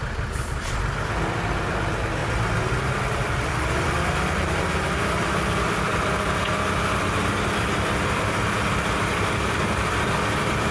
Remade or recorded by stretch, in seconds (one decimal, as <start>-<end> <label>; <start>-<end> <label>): 0.0-5.9 remade; 5.9-7.4 recorded; 7.4-10.7 remade